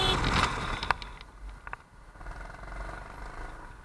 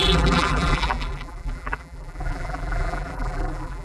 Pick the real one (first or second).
first